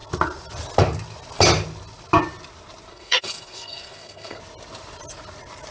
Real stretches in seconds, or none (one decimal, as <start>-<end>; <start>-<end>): 0.0-2.9; 4.4-5.7